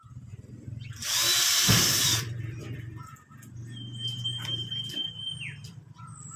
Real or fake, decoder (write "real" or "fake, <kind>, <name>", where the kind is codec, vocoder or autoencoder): fake, vocoder, BigVGAN v2